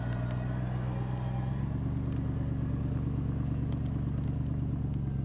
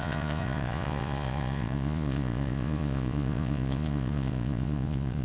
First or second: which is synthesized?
second